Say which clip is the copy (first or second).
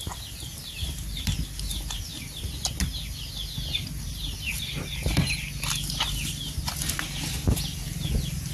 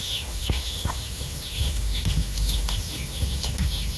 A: second